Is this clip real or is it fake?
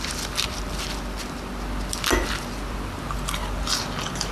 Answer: real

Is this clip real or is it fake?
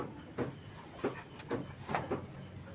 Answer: real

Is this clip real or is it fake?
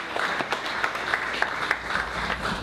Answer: real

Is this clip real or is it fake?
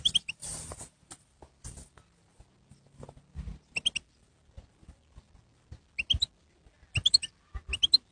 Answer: real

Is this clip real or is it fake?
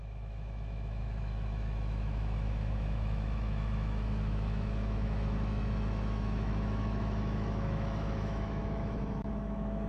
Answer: fake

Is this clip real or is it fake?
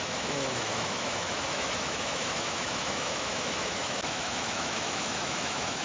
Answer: fake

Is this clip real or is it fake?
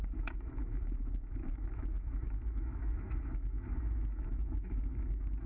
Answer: fake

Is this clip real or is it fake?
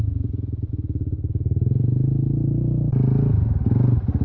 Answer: real